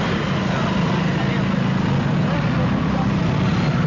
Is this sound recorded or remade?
recorded